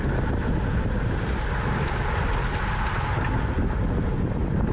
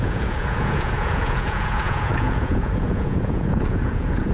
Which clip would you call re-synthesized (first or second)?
second